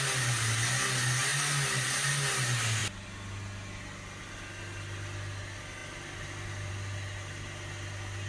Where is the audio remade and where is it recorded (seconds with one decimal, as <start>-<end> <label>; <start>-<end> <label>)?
0.0-8.3 recorded